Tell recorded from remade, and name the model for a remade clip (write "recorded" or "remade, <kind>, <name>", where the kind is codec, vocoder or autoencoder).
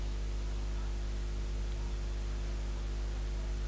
recorded